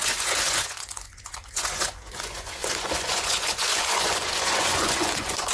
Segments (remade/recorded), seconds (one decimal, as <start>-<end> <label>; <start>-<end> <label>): 0.0-5.5 remade